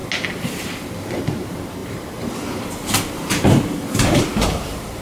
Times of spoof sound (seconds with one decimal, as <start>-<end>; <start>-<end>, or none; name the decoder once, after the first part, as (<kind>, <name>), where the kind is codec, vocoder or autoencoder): 1.2-5.0 (vocoder, BigVGAN v2)